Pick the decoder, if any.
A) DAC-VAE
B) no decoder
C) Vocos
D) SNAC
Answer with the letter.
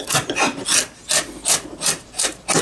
B